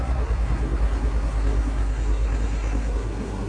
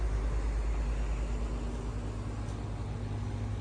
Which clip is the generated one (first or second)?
first